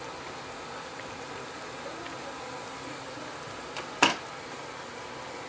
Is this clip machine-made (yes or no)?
no